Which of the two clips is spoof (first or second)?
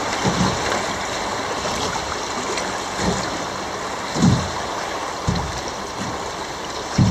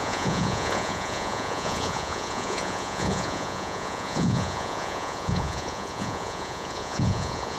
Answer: second